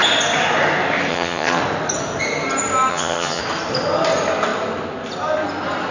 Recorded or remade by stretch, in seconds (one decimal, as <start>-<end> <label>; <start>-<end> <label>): 0.0-1.1 recorded; 1.1-1.6 remade; 1.6-2.9 recorded; 2.9-3.4 remade; 3.4-5.9 recorded